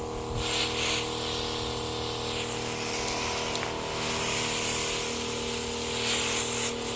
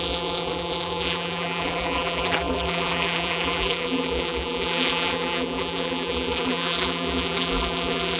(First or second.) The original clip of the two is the first